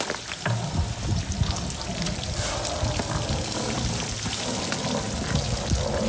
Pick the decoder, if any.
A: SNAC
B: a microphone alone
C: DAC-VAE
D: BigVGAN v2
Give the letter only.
B